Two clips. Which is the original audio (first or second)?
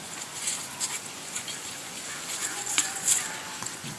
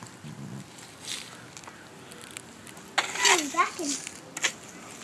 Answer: second